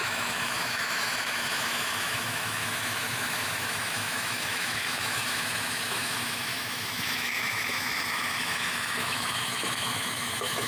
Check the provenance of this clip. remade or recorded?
remade